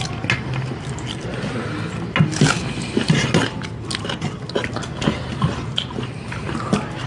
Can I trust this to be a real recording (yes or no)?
yes